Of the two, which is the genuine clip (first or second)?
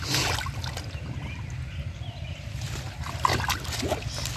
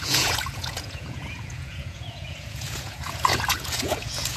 first